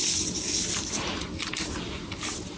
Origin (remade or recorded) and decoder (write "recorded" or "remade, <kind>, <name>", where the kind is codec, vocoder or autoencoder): recorded